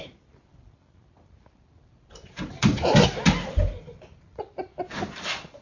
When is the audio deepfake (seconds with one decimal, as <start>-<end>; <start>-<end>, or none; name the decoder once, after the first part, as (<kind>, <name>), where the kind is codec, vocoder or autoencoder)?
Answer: none